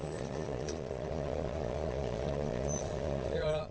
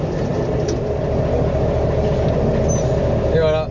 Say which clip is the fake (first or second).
first